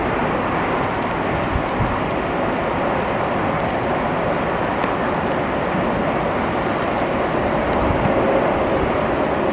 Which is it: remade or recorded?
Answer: recorded